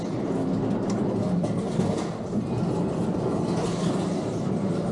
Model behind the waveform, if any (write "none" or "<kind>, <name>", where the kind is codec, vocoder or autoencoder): none